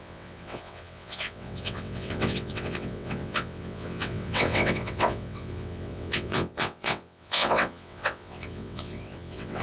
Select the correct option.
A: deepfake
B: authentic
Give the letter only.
A